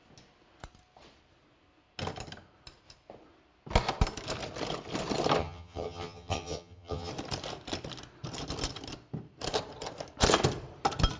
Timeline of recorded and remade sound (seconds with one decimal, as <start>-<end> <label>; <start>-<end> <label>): 0.0-5.4 recorded; 5.4-7.1 remade; 7.1-11.2 recorded